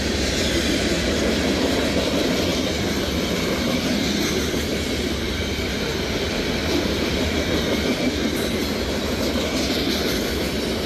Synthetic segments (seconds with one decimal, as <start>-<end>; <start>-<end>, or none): 2.5-4.1; 4.7-5.6; 6.6-7.4